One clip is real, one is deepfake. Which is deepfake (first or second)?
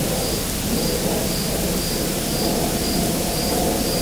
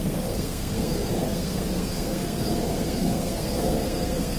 second